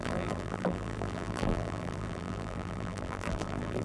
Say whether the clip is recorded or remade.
remade